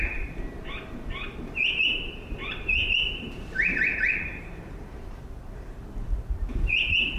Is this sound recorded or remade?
remade